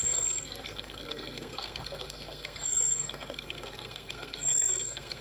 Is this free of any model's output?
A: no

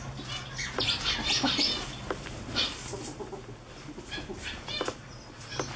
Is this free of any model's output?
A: yes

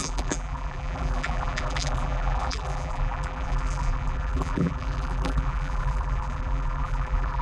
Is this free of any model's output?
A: no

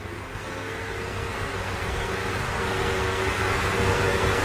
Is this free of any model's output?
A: no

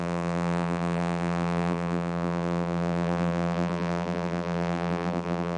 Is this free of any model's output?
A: no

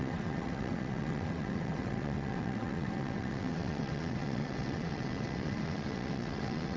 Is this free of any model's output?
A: no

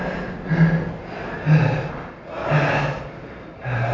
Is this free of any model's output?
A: yes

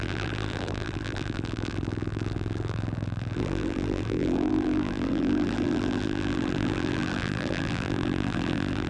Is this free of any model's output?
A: no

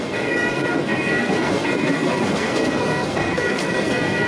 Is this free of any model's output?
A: no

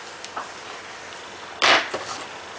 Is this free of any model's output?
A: yes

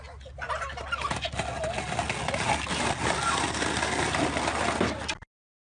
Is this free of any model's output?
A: yes